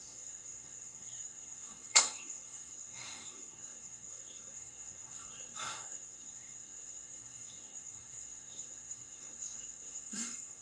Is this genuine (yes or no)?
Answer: no